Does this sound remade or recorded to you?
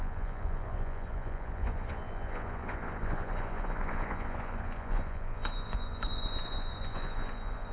remade